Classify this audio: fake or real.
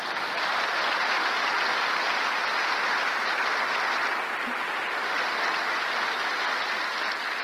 real